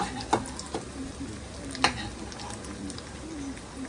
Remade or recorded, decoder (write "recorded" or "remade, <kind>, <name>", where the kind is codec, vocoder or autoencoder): recorded